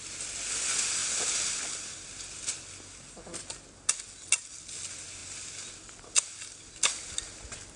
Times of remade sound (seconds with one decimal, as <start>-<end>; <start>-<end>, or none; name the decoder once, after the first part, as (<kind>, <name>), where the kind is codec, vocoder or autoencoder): none